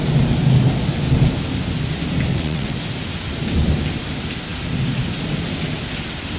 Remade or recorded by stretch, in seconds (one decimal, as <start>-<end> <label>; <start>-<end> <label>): 0.0-2.3 recorded; 2.3-2.8 remade; 2.8-6.4 recorded